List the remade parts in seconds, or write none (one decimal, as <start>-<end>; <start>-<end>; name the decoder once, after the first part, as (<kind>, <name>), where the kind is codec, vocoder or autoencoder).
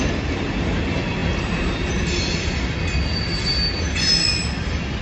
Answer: none